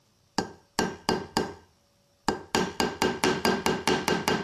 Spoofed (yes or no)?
no